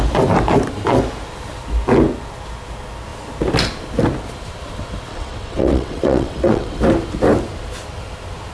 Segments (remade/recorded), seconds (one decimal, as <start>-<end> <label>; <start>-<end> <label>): 0.0-5.1 recorded; 5.1-6.8 remade; 6.8-8.5 recorded